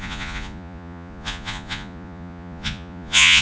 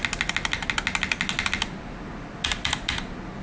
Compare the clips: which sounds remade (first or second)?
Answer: first